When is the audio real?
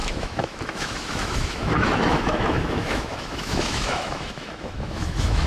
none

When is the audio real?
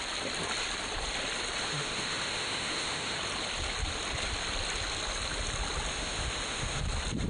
0.0-1.6; 3.2-5.9; 6.8-7.3